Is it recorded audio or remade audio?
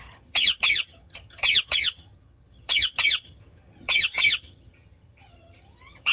remade